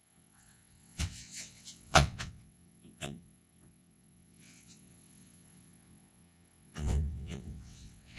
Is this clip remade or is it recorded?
remade